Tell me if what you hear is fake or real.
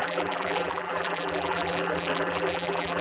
fake